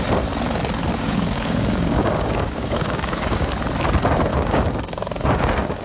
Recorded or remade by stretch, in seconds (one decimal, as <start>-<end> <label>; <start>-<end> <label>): 0.0-0.9 recorded; 0.9-3.5 remade; 3.5-4.3 recorded; 4.3-5.8 remade